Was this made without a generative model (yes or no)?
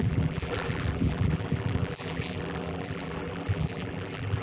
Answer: no